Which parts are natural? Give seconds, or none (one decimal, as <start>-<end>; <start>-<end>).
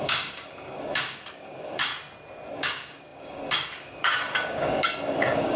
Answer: 1.9-2.6